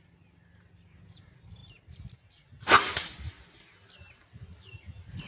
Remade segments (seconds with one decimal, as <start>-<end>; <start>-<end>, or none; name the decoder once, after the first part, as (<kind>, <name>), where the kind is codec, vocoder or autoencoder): none